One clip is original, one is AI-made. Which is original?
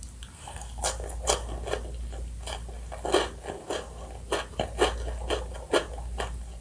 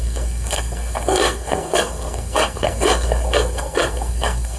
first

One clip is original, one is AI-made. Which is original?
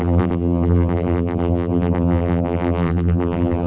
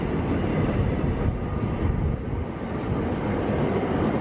second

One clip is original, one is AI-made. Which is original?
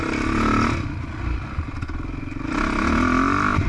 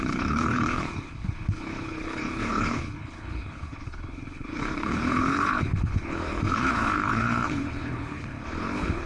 first